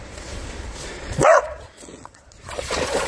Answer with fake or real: fake